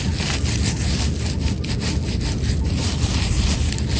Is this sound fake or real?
real